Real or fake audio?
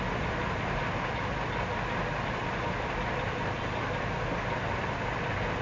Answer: real